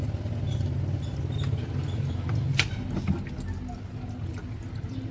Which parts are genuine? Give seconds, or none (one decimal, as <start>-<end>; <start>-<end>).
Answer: 0.0-5.1

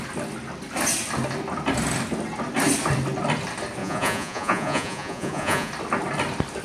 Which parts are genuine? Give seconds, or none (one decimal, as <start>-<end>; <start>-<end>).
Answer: 0.0-3.8; 5.7-6.6